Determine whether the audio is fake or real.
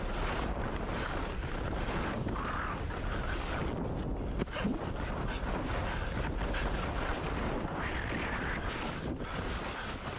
real